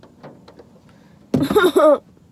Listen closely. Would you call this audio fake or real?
real